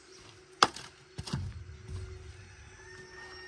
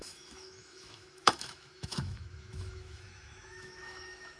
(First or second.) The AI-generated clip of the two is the second